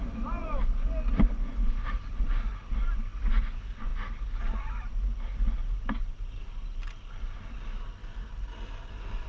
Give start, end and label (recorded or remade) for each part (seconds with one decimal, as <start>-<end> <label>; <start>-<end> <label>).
0.0-9.3 recorded